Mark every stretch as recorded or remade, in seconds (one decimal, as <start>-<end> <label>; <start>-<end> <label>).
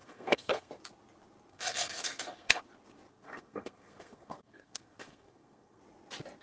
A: 0.0-0.7 remade; 0.7-1.5 recorded; 1.5-2.6 remade; 2.6-3.1 recorded; 3.1-5.8 remade; 5.8-6.4 recorded